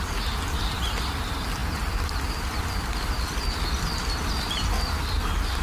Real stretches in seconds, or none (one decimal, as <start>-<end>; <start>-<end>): 0.0-1.6; 3.9-5.6